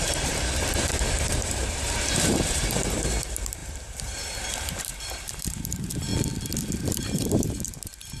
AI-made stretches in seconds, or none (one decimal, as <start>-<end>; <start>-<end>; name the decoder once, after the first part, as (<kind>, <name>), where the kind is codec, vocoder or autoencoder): 0.0-6.1 (vocoder, BigVGAN v2); 6.8-8.2

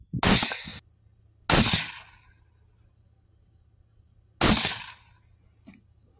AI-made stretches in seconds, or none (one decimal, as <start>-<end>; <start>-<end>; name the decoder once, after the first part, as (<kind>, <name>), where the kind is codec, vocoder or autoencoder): none

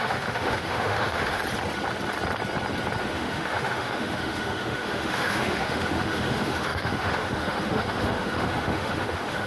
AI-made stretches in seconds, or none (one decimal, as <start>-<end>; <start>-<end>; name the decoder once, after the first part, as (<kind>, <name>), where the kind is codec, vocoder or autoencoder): 0.0-1.4 (autoencoder, DAC-VAE); 3.0-9.5

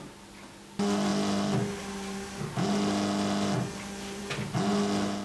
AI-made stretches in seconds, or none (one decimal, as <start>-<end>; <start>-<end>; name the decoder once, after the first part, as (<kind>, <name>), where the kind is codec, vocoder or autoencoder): none

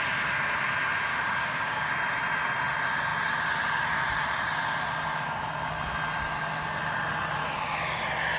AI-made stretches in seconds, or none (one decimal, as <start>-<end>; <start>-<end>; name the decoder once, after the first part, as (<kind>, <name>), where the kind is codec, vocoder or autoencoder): 1.1-1.9 (codec, DAC); 7.4-8.0